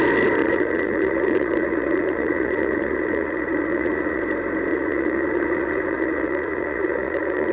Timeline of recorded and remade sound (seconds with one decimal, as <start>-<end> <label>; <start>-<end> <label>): 0.0-0.4 recorded; 0.4-4.2 remade; 4.2-4.7 recorded; 4.7-7.5 remade